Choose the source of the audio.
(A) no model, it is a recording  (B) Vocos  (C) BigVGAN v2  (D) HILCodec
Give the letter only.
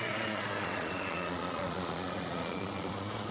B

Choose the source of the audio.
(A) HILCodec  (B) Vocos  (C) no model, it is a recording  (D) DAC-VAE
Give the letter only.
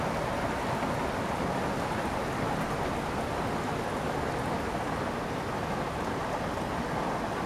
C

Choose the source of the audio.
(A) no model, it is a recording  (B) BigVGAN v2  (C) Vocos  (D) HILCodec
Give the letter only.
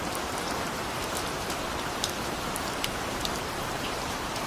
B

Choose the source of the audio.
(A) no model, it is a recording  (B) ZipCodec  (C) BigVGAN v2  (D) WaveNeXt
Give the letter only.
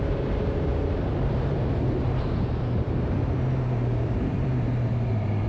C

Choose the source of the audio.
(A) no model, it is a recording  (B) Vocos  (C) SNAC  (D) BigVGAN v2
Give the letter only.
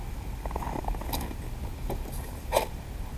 A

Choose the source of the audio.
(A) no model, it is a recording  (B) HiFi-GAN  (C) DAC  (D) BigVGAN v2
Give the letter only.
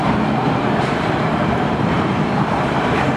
D